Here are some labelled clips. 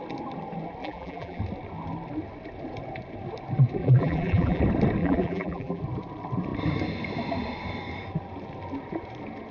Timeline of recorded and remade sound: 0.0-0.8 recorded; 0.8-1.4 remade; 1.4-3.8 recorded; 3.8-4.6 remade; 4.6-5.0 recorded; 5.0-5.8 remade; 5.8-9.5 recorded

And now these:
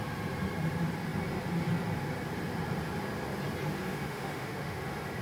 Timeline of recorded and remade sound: 0.0-3.9 recorded; 3.9-4.8 remade; 4.8-5.2 recorded

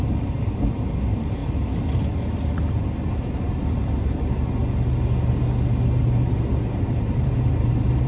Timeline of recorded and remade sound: 0.0-1.4 remade; 1.4-3.1 recorded; 3.1-4.6 remade; 4.6-6.0 recorded; 6.0-8.1 remade

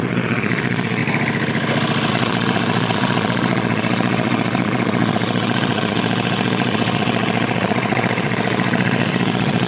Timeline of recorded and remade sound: 0.0-1.0 remade; 1.0-2.1 recorded; 2.1-9.7 remade

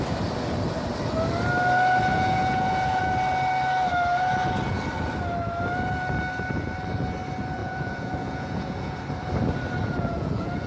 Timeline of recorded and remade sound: 0.0-2.1 recorded; 2.1-3.0 remade; 3.0-7.6 recorded; 7.6-9.0 remade; 9.0-9.8 recorded; 9.8-10.7 remade

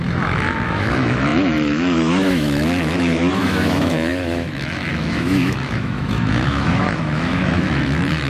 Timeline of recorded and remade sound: 0.0-8.3 remade

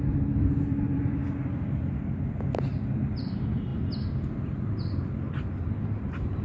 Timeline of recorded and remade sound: 0.0-1.2 remade; 1.2-3.0 recorded; 3.0-3.7 remade; 3.7-5.3 recorded; 5.3-6.4 remade